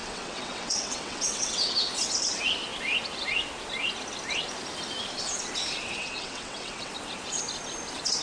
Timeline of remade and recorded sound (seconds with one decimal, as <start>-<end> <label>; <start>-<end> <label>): 0.0-1.7 remade; 1.7-6.0 recorded; 6.0-6.9 remade; 6.9-8.2 recorded